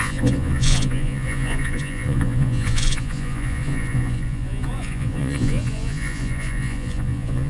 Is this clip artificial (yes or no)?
yes